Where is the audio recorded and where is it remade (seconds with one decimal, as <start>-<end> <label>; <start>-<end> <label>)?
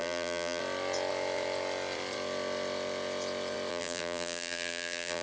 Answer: 0.0-0.6 remade; 0.6-3.7 recorded; 3.7-5.2 remade